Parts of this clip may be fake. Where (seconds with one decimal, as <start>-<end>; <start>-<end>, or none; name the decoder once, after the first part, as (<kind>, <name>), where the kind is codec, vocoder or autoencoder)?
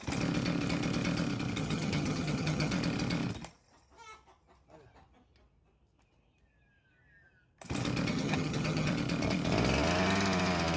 1.6-2.7 (vocoder, HiFi-GAN); 8.1-8.9